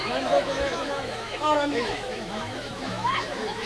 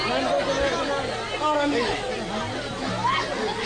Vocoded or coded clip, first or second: first